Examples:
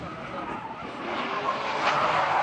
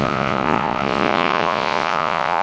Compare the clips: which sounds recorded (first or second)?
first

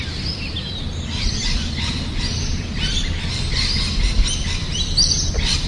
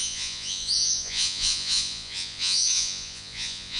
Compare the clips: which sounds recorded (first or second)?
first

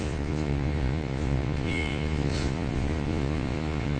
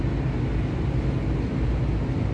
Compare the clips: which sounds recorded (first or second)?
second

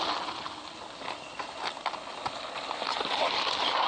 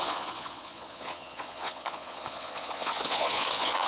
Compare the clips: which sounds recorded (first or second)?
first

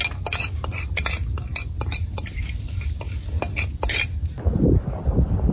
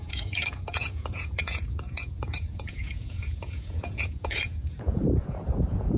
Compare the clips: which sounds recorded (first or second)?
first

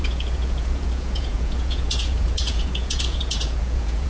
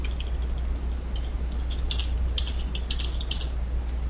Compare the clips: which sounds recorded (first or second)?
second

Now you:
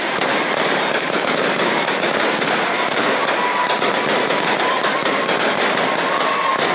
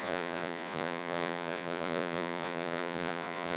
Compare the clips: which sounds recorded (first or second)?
first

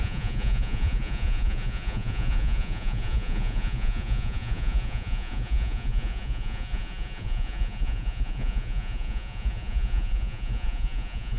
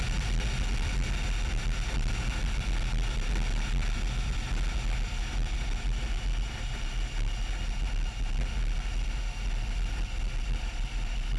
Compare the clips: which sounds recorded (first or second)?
second